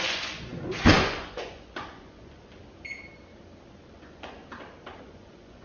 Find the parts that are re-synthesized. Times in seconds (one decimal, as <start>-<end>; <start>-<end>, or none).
0.0-2.6; 3.9-4.4; 5.0-5.6